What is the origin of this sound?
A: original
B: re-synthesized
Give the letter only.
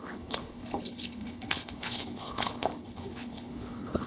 B